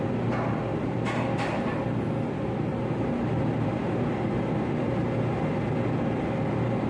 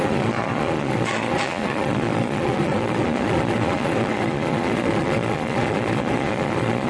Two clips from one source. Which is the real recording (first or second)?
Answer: first